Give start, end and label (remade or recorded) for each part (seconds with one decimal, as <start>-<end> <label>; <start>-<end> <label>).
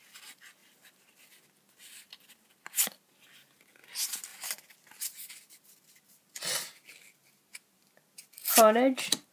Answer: 0.0-9.3 recorded